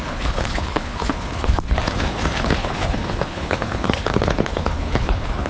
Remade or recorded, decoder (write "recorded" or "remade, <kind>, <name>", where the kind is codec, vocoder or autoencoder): remade, codec, HILCodec